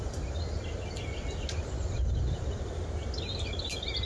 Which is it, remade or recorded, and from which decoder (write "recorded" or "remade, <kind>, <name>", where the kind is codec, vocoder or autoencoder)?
recorded